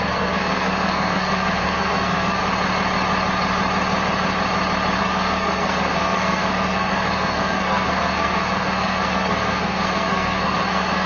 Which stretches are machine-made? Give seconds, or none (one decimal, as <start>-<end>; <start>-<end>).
0.0-2.4; 5.0-11.1